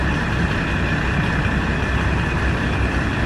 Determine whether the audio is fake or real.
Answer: real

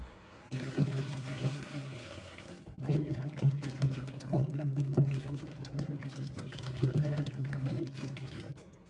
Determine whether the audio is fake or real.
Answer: fake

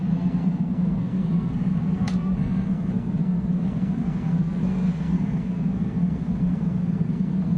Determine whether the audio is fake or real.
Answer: fake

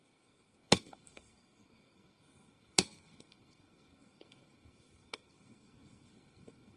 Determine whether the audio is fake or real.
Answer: fake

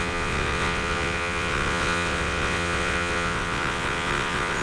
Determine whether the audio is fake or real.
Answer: fake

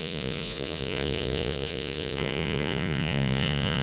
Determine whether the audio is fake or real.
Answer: fake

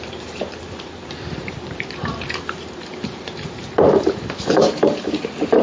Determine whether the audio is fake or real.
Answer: fake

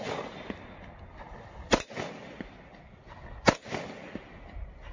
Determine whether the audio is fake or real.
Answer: real